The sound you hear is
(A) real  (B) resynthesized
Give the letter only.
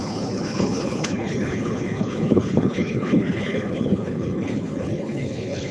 B